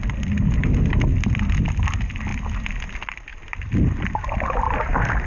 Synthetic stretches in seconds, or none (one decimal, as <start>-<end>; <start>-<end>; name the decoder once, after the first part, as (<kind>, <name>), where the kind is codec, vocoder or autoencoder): none